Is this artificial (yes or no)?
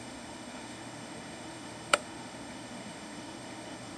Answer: yes